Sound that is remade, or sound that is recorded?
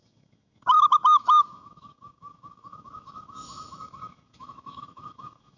remade